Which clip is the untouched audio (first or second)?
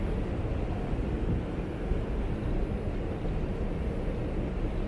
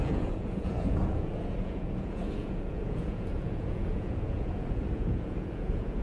first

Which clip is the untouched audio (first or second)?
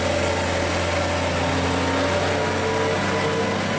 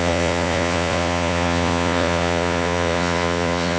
first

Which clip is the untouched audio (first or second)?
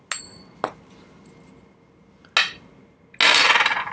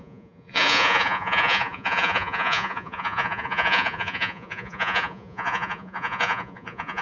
first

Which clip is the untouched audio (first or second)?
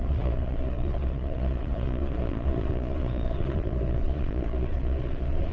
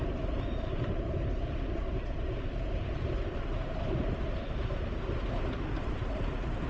second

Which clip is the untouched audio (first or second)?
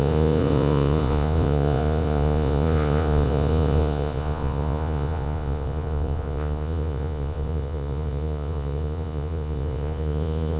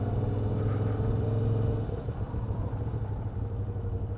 second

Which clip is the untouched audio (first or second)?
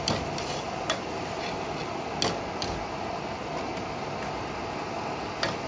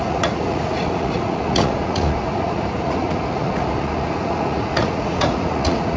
first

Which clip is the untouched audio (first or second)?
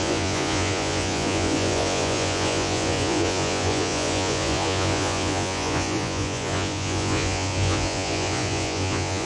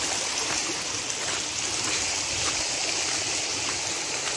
second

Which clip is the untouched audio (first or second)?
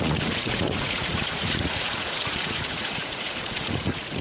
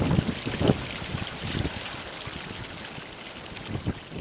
second